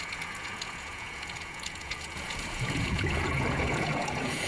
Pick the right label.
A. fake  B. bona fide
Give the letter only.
A